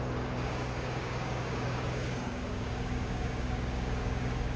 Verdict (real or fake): fake